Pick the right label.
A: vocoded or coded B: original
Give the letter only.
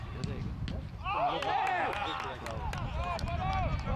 B